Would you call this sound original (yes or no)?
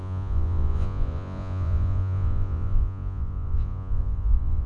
no